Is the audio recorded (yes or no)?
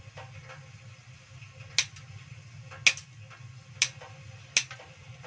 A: yes